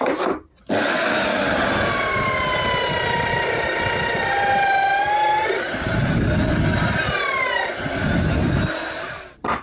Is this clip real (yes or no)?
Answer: yes